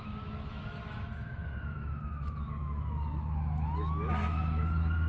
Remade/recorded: remade